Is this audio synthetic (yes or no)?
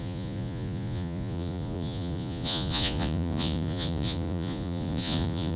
yes